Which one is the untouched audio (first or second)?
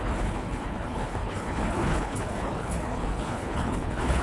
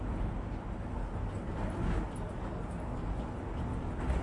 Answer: second